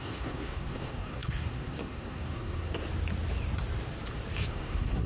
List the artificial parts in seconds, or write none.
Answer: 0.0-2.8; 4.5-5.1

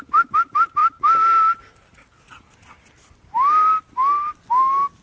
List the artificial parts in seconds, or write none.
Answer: none

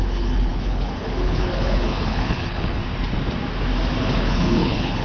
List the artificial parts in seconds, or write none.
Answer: 0.0-2.8; 4.0-5.0

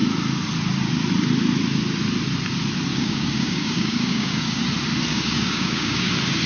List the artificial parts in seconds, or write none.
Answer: 2.9-4.6; 5.1-6.1

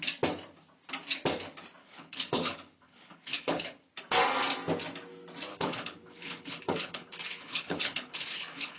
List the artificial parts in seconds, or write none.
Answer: 1.8-3.8; 5.5-8.8

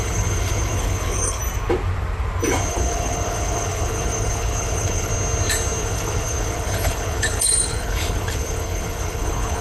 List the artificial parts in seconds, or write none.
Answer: 0.0-1.4; 2.7-5.1; 5.8-9.6

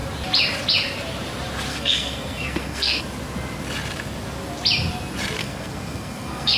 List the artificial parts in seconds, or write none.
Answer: 1.7-3.0; 5.4-6.6